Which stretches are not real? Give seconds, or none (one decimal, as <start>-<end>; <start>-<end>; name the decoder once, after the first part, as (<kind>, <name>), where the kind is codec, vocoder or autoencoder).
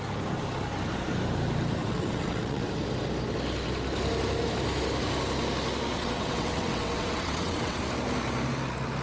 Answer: 1.8-2.7 (vocoder, WaveNeXt); 5.9-7.8